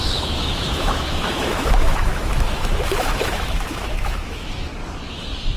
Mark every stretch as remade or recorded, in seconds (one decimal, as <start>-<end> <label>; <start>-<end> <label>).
0.0-4.7 remade; 4.7-5.6 recorded